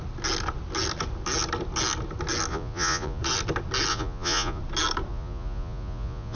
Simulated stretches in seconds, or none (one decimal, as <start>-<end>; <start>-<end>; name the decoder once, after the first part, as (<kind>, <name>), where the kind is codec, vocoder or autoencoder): 2.5-3.2 (vocoder, Vocos); 3.9-4.6; 5.1-6.4

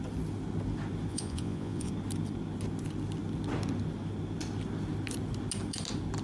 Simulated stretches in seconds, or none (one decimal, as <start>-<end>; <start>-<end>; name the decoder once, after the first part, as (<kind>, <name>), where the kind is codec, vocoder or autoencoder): 1.1-1.9 (vocoder, Vocos)

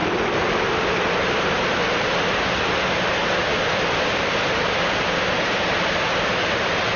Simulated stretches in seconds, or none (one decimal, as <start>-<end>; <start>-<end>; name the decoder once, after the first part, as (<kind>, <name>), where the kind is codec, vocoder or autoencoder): none

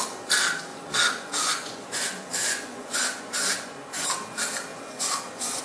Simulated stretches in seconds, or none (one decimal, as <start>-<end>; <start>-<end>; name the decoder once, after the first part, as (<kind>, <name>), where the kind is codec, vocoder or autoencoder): 0.7-4.1 (vocoder, Vocos); 4.7-5.6

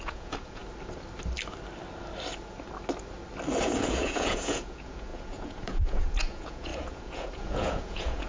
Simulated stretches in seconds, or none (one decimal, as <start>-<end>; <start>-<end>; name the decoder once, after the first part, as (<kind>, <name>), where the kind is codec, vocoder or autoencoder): 0.0-0.6 (vocoder, Vocos); 3.6-8.3